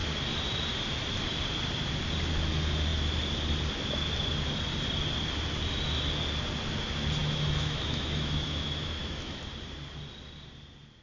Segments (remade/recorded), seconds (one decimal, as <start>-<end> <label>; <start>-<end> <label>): 0.0-7.2 recorded; 7.2-9.4 remade; 9.4-11.0 recorded